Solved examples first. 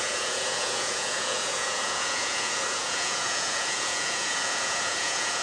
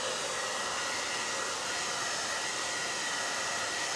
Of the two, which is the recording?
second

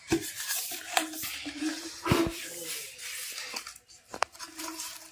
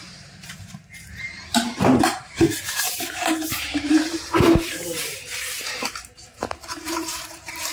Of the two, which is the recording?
first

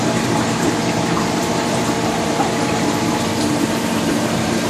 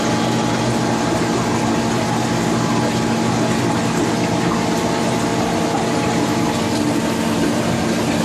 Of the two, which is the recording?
second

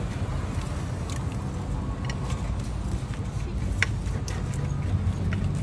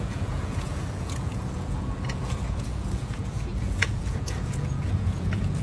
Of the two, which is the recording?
first